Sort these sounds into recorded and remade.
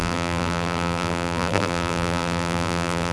remade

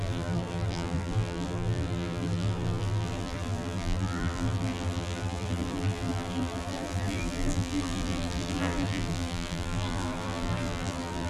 remade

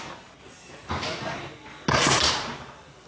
recorded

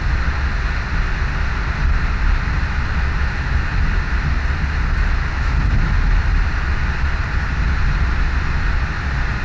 recorded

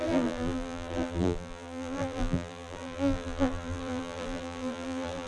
remade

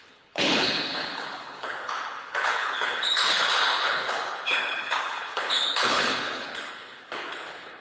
remade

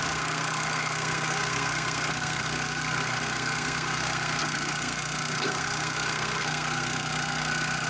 remade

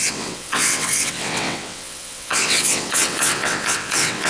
remade